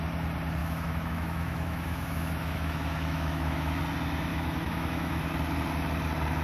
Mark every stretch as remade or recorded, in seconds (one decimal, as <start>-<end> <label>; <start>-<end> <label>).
0.0-0.6 recorded; 0.6-3.8 remade; 3.8-4.3 recorded; 4.3-5.2 remade; 5.2-6.4 recorded